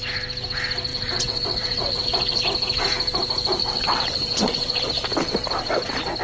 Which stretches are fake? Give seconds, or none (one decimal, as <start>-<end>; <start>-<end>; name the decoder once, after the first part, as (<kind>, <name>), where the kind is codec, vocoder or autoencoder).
0.9-2.4 (vocoder, WaveNeXt); 3.6-4.8